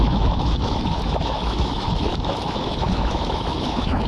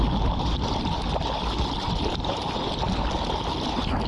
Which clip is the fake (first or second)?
first